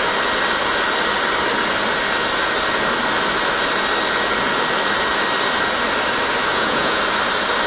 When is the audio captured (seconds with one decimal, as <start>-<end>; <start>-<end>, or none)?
0.0-6.5; 7.0-7.7